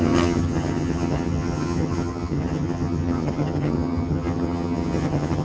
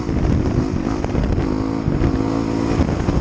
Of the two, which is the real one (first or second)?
second